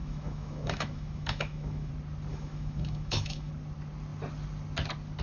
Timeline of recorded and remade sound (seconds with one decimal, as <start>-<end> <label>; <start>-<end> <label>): 0.0-1.9 remade; 1.9-2.3 recorded; 2.3-3.5 remade; 3.5-5.2 recorded

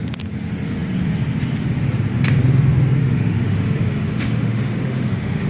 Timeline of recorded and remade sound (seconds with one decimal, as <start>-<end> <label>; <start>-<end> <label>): 0.0-3.0 recorded; 3.0-5.5 remade

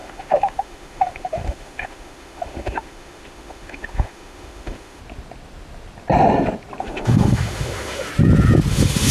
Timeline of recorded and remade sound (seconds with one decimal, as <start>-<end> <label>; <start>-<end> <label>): 0.0-5.0 remade; 5.0-6.8 recorded; 6.8-8.1 remade; 8.1-8.7 recorded; 8.7-9.1 remade

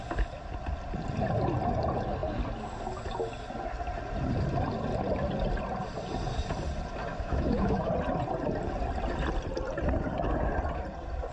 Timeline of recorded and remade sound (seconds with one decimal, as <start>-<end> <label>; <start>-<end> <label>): 0.0-7.1 recorded; 7.1-7.9 remade; 7.9-11.3 recorded

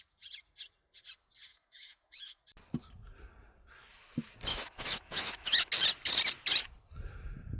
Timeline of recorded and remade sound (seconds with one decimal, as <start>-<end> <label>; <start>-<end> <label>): 0.0-1.5 recorded; 1.5-2.4 remade; 2.4-4.5 recorded; 4.5-5.7 remade; 5.7-7.6 recorded